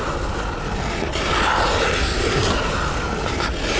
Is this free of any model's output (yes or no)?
yes